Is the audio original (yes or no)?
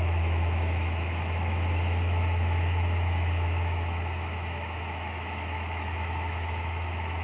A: no